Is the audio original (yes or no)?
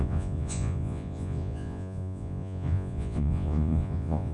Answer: no